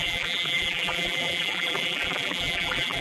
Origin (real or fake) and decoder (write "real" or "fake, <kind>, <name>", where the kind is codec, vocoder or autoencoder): fake, vocoder, BigVGAN v2